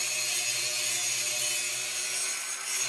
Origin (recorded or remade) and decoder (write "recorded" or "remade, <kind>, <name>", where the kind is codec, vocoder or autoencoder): recorded